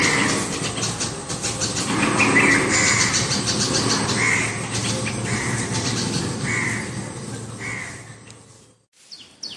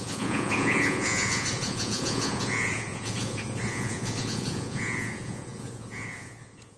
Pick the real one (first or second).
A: first